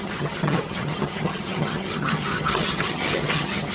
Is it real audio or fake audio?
fake